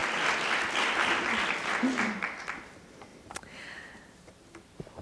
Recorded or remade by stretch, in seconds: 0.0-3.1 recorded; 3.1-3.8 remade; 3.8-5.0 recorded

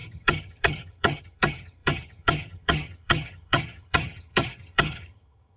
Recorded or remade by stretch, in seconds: 0.0-5.6 remade

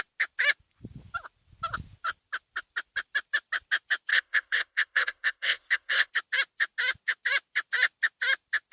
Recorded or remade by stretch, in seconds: 0.0-4.1 recorded; 4.1-6.1 remade; 6.1-8.7 recorded

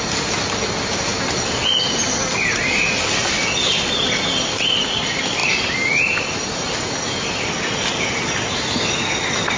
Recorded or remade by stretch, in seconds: 0.0-9.6 recorded

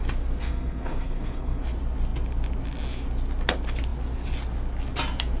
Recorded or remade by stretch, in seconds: 0.0-0.4 recorded; 0.4-1.6 remade; 1.6-5.4 recorded